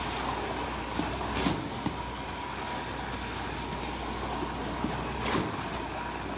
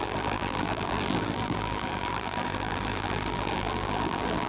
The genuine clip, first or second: first